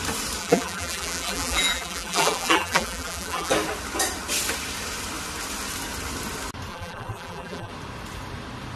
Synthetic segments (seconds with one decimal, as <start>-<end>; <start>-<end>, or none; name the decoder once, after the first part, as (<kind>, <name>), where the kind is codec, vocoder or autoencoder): 0.4-3.5 (vocoder, BigVGAN v2); 6.7-7.7